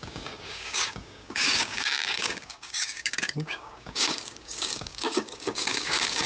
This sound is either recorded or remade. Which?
remade